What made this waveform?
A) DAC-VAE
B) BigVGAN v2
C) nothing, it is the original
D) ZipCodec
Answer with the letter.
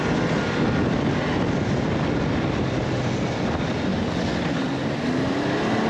C